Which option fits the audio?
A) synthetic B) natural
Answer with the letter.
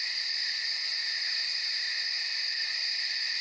A